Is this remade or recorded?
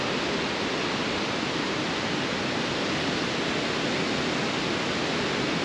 recorded